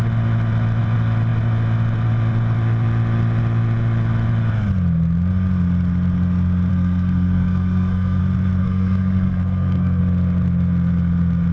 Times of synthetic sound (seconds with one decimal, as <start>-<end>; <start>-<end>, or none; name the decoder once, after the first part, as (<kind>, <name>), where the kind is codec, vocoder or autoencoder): 6.7-8.2 (codec, SNAC); 8.6-10.0